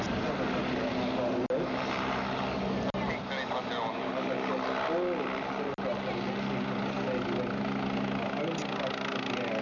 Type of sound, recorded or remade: recorded